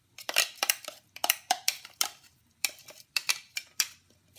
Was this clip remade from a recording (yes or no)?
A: yes